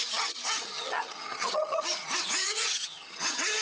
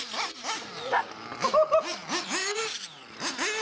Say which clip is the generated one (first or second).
first